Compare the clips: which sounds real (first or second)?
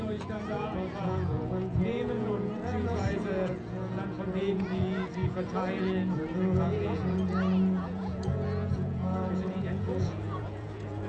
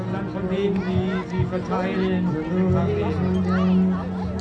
second